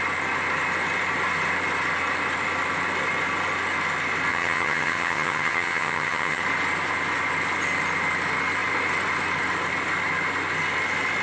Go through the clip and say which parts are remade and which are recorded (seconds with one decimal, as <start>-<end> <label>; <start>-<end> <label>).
0.0-4.3 recorded; 4.3-6.4 remade; 6.4-11.2 recorded